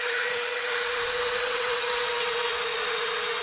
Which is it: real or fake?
fake